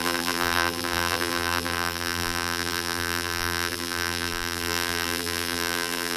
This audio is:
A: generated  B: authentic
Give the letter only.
A